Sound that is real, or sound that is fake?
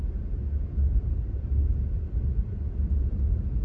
real